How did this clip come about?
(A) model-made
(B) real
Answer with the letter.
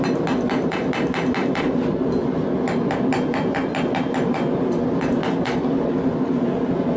B